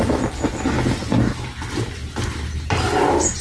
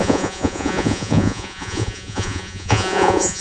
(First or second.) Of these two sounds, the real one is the first